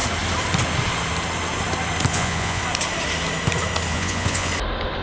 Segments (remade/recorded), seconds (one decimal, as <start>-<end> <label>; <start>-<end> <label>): 0.0-2.1 recorded; 2.1-2.6 remade; 2.6-3.9 recorded; 3.9-4.5 remade; 4.5-5.0 recorded